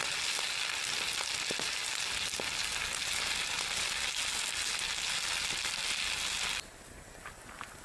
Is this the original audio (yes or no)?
yes